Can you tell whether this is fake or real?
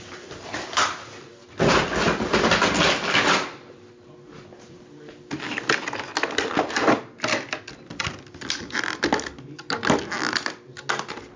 real